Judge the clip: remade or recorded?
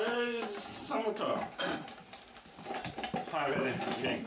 recorded